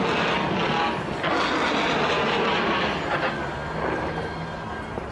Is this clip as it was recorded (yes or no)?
yes